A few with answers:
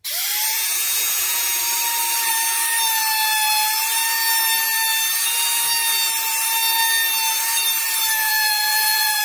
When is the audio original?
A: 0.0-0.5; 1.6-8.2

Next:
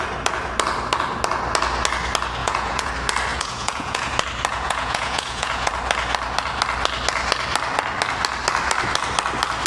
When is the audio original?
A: 0.0-2.4; 2.9-3.3; 4.1-4.5; 5.7-9.7

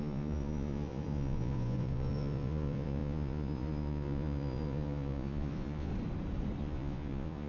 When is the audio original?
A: 5.9-6.6

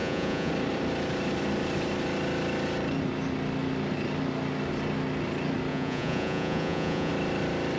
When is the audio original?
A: 0.5-5.7; 7.1-7.8